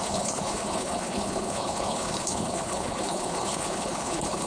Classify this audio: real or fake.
fake